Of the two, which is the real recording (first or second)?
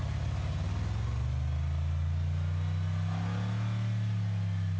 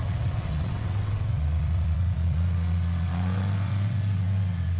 first